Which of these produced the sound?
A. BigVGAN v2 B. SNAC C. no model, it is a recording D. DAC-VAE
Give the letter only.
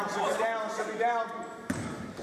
A